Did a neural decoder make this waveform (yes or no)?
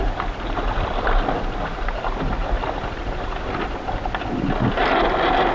no